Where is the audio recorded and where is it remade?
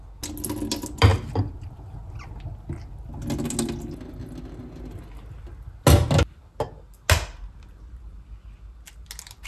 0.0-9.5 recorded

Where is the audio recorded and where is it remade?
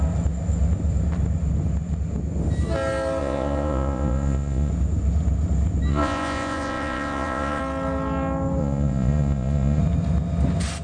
0.0-3.2 recorded; 3.2-4.7 remade; 4.7-5.9 recorded; 5.9-7.6 remade; 7.6-8.6 recorded; 8.6-9.8 remade; 9.8-10.8 recorded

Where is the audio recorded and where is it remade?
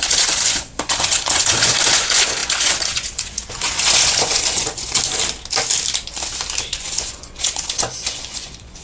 0.0-5.0 remade; 5.0-6.7 recorded; 6.7-8.8 remade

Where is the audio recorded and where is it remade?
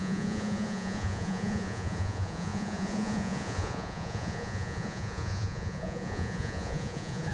0.0-7.3 remade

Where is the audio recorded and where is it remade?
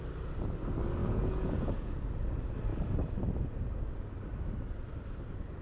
0.0-1.0 recorded; 1.0-1.9 remade; 1.9-5.6 recorded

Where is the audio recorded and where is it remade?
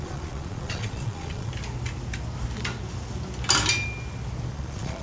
0.0-1.5 remade; 1.5-4.5 recorded; 4.5-5.0 remade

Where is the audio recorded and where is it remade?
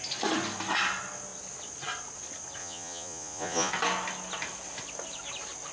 0.0-2.6 recorded; 2.6-3.7 remade; 3.7-5.7 recorded